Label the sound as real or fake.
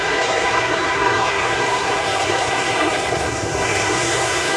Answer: fake